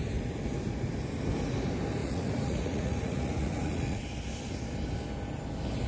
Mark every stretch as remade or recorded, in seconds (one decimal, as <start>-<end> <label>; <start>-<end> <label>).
0.0-2.0 recorded; 2.0-4.0 remade; 4.0-5.9 recorded